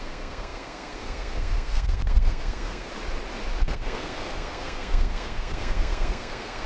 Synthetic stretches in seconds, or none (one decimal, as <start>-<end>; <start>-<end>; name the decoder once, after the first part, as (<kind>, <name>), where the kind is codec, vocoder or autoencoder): 0.0-2.9 (codec, SNAC); 3.6-6.7